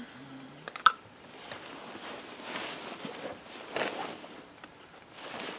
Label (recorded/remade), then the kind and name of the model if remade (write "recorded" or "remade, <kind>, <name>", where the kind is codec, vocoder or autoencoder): recorded